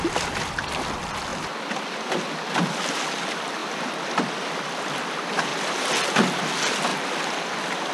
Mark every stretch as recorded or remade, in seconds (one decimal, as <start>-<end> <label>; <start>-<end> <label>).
0.0-5.5 recorded; 5.5-6.1 remade; 6.1-6.9 recorded; 6.9-7.9 remade